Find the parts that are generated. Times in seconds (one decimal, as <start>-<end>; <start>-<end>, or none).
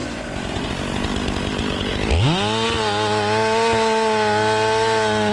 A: 0.0-0.7